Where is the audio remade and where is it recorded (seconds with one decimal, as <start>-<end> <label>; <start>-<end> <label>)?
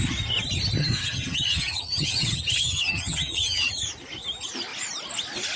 0.0-0.8 recorded; 0.8-3.7 remade; 3.7-5.6 recorded